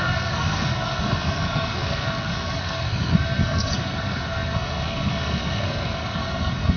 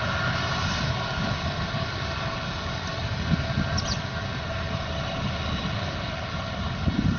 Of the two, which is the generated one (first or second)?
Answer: first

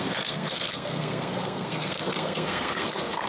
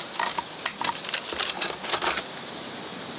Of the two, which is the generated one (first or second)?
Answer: first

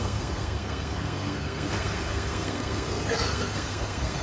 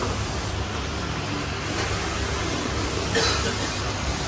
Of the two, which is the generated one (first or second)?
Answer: first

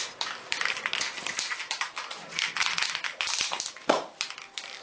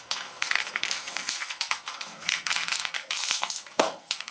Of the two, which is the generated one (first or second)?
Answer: second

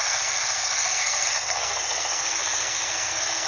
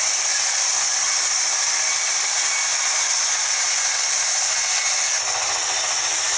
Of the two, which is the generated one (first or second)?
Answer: first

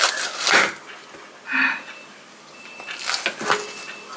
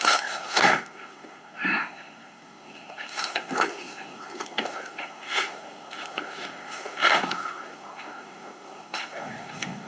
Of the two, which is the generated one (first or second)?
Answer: second